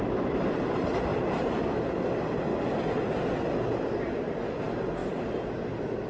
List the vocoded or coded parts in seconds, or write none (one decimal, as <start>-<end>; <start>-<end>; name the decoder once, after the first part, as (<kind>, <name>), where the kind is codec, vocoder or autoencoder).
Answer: none